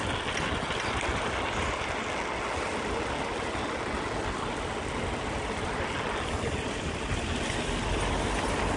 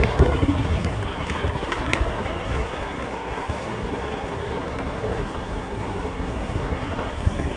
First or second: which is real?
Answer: first